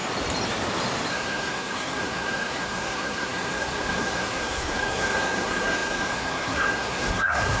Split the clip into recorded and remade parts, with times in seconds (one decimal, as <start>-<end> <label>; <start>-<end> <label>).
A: 0.0-1.1 recorded; 1.1-7.6 remade